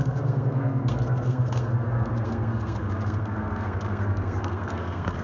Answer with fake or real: fake